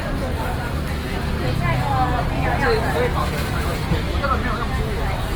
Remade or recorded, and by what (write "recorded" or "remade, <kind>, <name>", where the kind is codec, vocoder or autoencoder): recorded